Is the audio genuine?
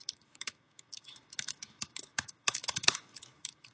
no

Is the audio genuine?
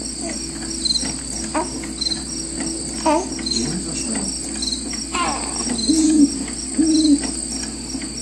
yes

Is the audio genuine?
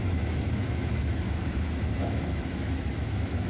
no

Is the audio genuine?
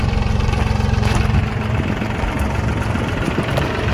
yes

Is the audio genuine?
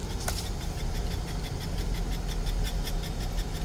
yes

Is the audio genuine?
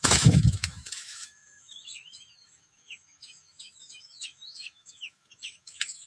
no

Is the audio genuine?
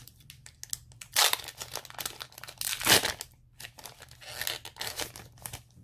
yes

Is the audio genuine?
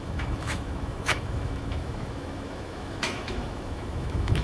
no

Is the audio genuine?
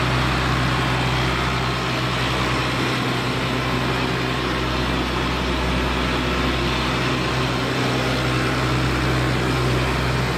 yes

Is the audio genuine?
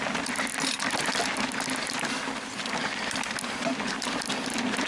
yes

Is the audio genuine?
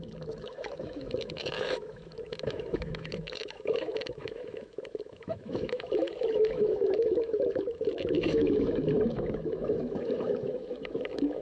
no